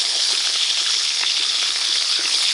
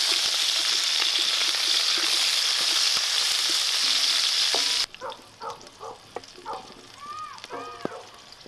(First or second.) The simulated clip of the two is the first